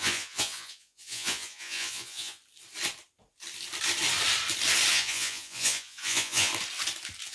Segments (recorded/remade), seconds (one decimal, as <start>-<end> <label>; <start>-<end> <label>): 0.0-2.4 remade; 2.4-4.9 recorded; 4.9-6.5 remade; 6.5-7.3 recorded